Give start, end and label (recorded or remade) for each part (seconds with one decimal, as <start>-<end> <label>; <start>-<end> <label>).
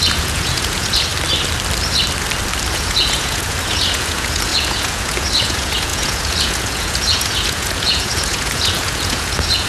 0.0-1.1 remade; 1.1-2.7 recorded; 2.7-9.7 remade